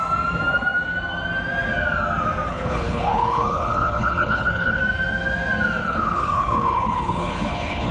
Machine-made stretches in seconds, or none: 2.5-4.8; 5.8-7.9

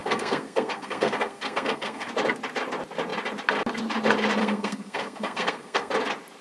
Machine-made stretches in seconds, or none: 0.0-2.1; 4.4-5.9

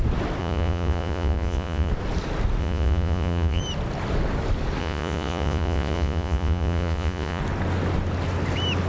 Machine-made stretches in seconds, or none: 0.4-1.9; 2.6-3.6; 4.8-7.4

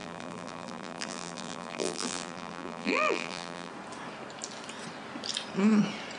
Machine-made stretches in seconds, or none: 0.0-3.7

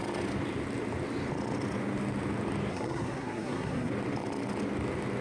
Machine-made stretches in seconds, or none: 2.7-3.9